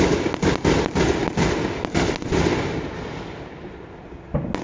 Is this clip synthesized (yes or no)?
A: no